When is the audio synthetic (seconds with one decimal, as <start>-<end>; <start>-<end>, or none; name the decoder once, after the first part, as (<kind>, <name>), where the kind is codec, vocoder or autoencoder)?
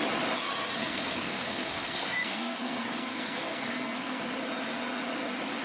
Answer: 0.8-4.2 (codec, SNAC)